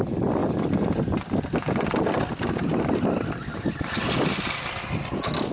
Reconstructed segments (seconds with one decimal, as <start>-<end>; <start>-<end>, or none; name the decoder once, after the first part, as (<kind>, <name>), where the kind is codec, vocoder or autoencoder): none